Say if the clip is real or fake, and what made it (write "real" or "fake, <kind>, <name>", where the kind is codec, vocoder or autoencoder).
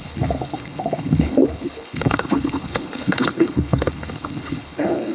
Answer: fake, codec, HILCodec